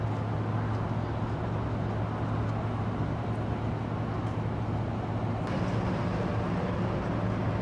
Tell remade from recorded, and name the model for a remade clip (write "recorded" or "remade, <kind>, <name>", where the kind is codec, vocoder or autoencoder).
recorded